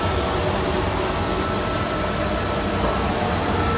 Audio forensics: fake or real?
real